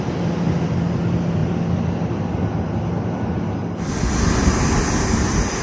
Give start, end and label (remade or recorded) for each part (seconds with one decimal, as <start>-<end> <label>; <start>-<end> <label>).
0.0-5.6 recorded